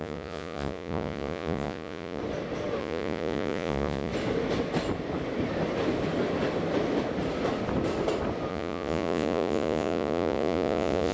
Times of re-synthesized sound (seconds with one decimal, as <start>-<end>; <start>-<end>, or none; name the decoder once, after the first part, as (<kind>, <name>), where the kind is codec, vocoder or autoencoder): 0.0-2.2 (vocoder, Vocos); 2.8-4.1; 8.5-11.1